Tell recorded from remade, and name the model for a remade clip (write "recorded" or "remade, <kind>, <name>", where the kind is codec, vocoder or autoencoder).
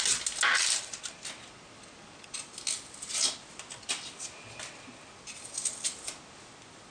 recorded